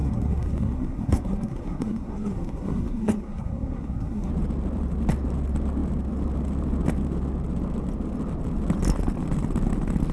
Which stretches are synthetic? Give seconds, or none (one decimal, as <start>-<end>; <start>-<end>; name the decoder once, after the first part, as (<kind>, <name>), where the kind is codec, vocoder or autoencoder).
0.0-4.3 (codec, SNAC)